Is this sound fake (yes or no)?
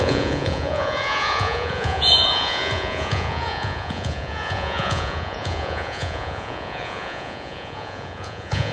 yes